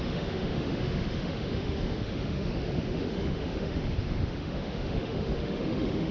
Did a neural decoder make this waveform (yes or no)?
yes